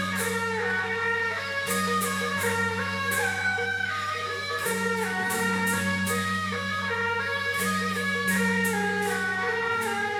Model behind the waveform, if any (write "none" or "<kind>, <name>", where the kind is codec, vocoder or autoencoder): autoencoder, DAC-VAE